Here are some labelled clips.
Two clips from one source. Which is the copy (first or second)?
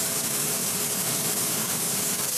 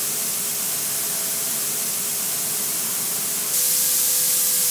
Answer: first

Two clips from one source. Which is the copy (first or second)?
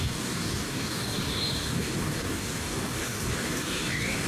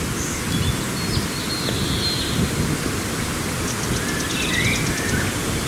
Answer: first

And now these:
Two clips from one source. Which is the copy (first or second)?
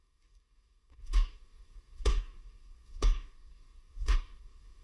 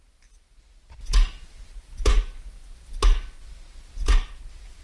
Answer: first